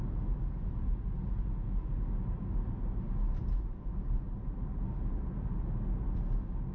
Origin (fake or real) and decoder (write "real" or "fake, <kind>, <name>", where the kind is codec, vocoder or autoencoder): real